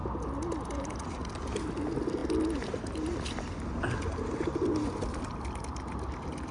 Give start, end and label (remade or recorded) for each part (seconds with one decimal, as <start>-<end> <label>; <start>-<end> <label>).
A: 0.0-6.5 recorded